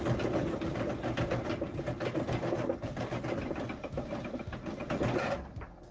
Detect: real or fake real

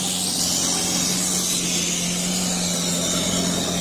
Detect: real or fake real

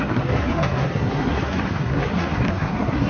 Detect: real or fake fake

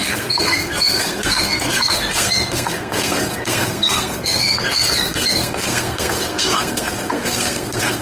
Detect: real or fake fake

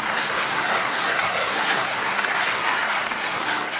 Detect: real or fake fake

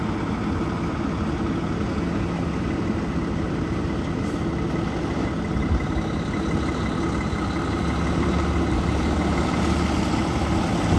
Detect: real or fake real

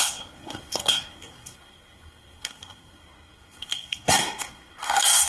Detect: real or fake fake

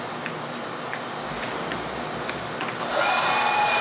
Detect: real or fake real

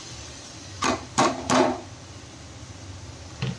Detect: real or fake real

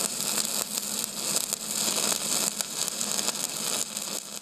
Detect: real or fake real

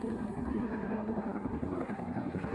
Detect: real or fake fake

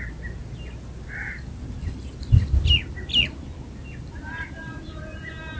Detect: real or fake real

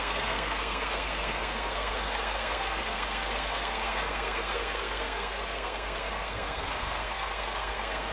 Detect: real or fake fake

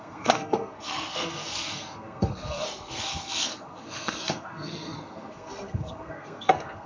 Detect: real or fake fake